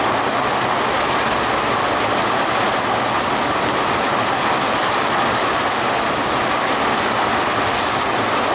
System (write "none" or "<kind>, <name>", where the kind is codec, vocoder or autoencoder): none